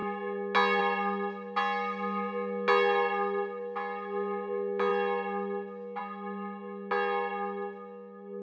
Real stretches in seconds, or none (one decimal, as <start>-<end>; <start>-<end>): 0.0-8.4